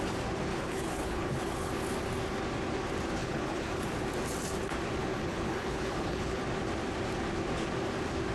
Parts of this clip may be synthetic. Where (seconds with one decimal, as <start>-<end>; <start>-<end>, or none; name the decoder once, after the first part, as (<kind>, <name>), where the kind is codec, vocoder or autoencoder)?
0.5-1.7 (codec, HILCodec); 3.2-3.9; 5.0-6.4